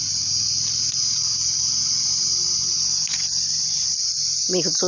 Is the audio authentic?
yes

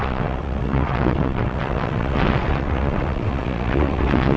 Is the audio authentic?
no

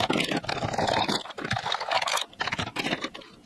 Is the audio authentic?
yes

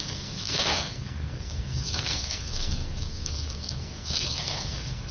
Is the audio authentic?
no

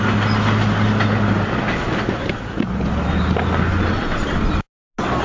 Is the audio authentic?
yes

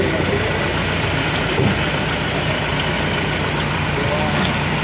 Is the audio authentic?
yes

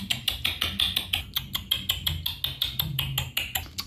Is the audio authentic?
yes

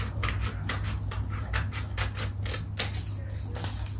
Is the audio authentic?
yes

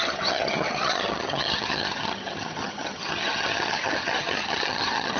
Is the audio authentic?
no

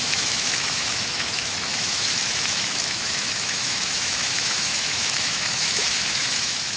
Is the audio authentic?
no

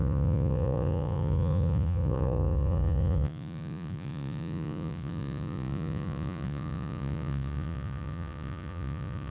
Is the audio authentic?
no